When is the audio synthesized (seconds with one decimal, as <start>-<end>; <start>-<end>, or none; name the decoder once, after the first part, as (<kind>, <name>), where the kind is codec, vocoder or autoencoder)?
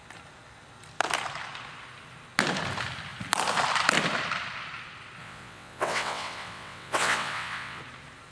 5.2-7.8 (vocoder, WaveNeXt)